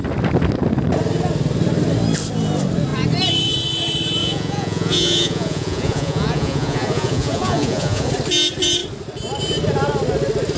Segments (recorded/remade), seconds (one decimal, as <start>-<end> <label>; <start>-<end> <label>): 0.0-4.2 recorded; 4.2-8.1 remade; 8.1-10.6 recorded

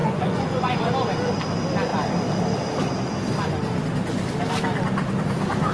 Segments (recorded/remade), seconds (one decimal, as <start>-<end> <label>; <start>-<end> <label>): 0.0-0.9 remade; 0.9-5.7 recorded

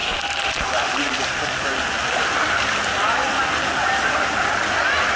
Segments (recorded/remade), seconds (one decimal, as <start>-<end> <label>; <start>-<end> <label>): 0.0-5.2 recorded

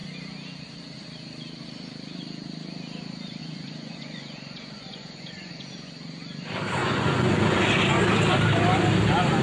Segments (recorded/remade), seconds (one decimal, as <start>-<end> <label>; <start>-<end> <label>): 0.0-3.4 recorded; 3.4-5.7 remade; 5.7-6.8 recorded; 6.8-7.7 remade; 7.7-9.4 recorded

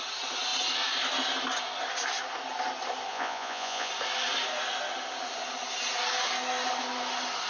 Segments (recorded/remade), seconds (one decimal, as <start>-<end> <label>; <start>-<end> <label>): 0.0-3.1 recorded; 3.1-3.9 remade; 3.9-7.5 recorded